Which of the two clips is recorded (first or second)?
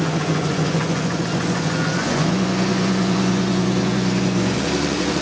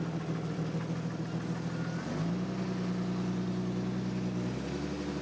second